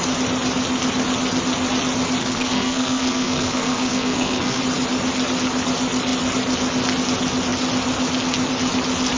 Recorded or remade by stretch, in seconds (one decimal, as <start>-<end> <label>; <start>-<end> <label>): 0.0-2.2 recorded; 2.2-4.6 remade; 4.6-9.2 recorded